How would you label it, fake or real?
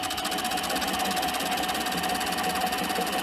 real